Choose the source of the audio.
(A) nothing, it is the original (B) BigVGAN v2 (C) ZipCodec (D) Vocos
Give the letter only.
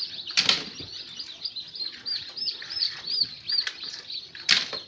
A